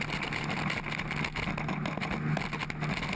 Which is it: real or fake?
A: real